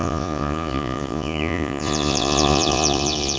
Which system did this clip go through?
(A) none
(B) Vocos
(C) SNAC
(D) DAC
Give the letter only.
B